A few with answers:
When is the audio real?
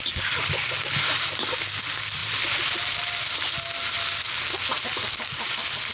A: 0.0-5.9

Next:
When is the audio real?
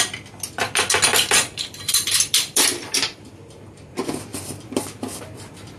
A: 0.0-1.1; 3.4-4.3; 5.2-5.8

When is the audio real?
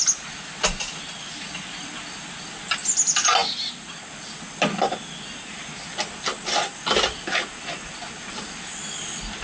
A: 0.0-3.4; 4.1-6.3; 6.8-9.4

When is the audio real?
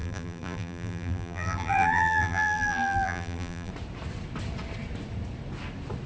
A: 3.7-6.1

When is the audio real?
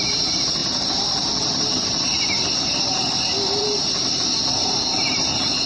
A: 0.0-0.6; 3.9-4.6